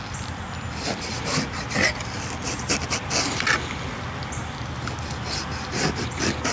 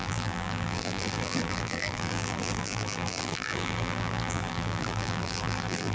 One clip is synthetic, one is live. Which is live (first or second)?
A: first